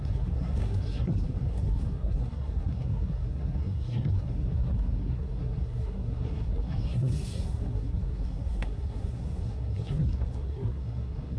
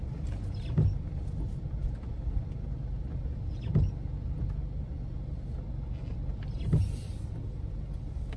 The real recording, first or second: second